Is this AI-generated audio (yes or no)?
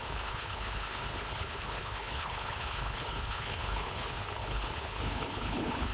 yes